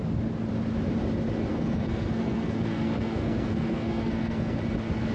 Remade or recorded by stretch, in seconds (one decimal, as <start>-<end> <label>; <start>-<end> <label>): 0.0-1.5 recorded; 1.5-4.6 remade; 4.6-5.1 recorded